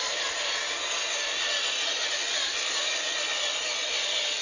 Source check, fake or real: real